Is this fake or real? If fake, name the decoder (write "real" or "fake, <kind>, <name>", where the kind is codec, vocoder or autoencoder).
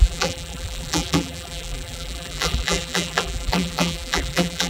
fake, vocoder, BigVGAN v2